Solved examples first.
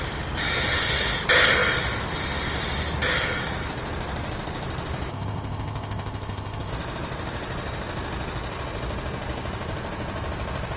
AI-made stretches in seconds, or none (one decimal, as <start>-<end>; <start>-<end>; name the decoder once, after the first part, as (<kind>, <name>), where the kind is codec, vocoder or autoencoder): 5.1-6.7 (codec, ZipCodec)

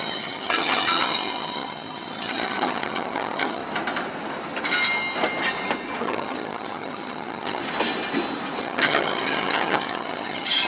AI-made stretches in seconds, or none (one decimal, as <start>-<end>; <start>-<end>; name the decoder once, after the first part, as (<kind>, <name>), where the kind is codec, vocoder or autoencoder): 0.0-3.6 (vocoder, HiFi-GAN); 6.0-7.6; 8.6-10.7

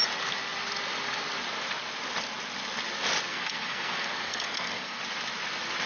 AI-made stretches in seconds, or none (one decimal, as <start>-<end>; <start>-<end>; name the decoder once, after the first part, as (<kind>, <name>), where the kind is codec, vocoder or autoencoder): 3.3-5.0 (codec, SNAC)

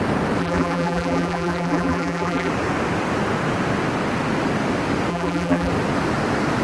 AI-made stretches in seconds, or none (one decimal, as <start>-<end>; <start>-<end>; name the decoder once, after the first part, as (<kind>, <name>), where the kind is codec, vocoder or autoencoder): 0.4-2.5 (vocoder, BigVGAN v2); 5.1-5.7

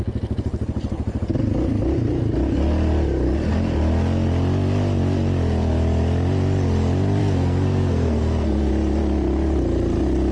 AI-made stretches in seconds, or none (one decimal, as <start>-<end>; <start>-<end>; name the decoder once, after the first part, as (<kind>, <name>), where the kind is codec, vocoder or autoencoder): 7.2-8.7 (codec, SNAC)

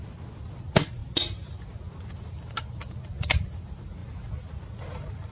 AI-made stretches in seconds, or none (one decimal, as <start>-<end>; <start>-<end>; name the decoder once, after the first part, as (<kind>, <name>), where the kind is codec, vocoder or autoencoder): none